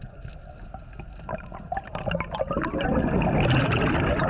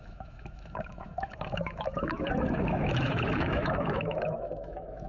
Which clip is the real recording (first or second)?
first